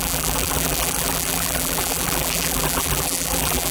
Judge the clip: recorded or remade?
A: remade